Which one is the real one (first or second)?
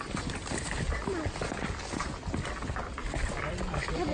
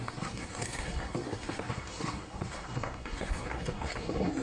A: first